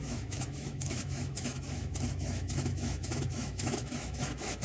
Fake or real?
fake